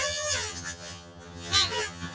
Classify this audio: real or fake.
fake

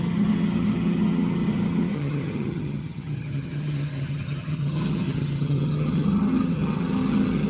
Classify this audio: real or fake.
fake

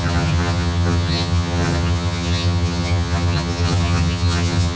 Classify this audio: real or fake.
fake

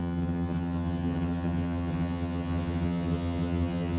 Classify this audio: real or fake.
fake